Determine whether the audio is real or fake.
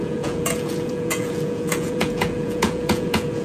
fake